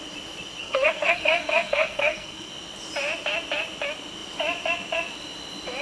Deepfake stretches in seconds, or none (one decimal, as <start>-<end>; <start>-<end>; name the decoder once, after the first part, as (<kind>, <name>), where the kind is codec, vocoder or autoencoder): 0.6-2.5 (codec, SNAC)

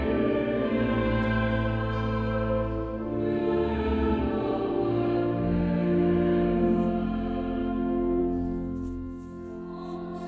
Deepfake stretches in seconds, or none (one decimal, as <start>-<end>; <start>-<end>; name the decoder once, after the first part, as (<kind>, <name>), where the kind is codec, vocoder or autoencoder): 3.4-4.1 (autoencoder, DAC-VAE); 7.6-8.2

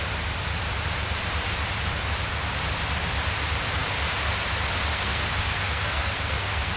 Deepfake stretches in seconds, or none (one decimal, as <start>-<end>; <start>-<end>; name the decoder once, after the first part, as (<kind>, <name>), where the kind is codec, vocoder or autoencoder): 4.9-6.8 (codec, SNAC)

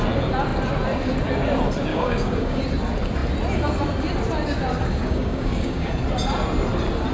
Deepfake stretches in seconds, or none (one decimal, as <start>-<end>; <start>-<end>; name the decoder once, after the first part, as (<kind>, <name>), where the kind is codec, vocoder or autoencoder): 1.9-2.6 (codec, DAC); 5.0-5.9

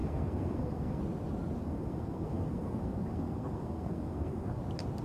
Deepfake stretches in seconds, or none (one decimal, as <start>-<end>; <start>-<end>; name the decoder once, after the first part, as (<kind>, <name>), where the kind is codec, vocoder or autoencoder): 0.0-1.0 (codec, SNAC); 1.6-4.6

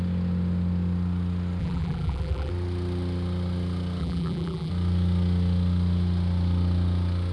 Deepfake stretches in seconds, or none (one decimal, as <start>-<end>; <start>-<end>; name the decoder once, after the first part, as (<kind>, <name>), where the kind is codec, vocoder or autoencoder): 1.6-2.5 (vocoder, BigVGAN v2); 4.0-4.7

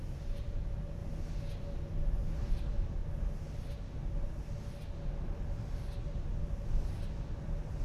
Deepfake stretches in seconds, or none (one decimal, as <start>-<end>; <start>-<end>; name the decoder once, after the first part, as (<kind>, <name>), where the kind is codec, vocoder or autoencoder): 0.0-1.0 (vocoder, BigVGAN v2); 2.5-3.0